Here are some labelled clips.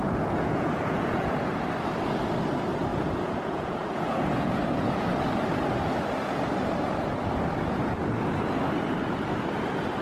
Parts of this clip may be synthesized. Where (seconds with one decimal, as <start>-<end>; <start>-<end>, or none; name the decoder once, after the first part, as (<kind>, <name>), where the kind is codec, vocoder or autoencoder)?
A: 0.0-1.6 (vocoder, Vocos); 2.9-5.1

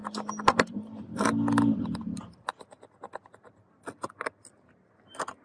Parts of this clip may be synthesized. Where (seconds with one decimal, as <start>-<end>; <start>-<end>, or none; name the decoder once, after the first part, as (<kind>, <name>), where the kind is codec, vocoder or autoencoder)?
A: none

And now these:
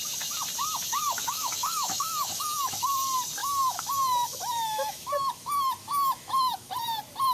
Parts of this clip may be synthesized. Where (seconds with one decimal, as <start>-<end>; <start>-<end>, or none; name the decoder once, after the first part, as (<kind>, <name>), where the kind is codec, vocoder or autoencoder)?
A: 0.9-2.9 (autoencoder, DAC-VAE); 3.4-6.7

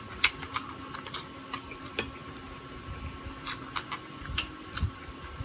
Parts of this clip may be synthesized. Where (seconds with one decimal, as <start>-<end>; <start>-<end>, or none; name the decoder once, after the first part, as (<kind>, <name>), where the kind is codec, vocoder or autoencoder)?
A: none

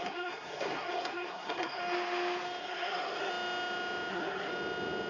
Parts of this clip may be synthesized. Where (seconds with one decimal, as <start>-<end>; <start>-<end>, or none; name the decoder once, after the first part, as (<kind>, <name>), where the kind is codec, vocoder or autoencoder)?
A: 0.0-1.8 (codec, SNAC); 2.6-3.3; 4.1-4.5